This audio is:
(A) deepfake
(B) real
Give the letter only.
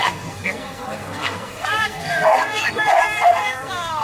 A